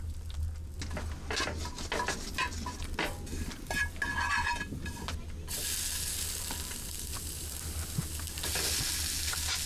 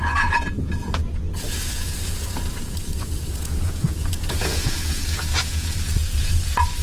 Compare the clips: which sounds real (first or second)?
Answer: first